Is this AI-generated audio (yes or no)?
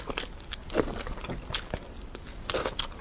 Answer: no